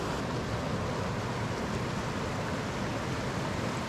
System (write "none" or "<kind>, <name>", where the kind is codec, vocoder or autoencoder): none